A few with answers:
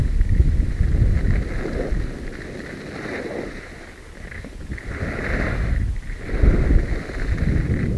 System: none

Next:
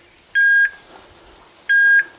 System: none